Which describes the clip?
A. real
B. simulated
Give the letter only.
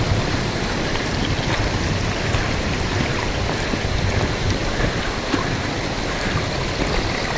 A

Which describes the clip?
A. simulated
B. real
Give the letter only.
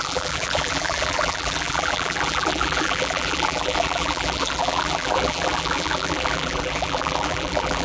A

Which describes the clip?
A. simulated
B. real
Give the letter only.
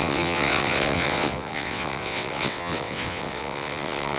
A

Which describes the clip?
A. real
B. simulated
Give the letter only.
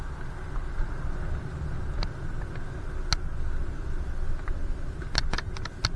A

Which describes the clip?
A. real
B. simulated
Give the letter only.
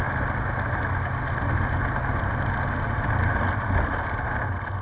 A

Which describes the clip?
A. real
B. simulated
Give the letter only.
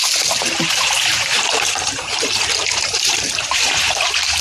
B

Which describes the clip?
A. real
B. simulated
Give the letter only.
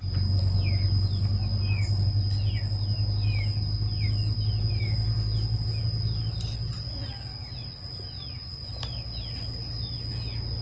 A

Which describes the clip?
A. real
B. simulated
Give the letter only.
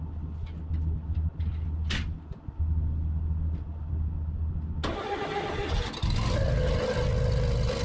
A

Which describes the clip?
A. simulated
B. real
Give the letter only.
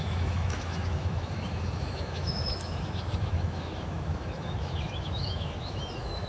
A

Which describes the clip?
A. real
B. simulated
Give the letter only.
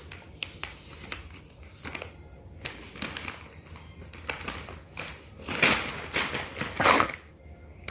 A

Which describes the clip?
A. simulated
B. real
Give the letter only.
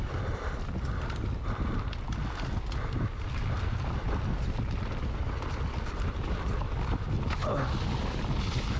B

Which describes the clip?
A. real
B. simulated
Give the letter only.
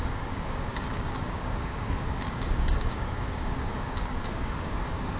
B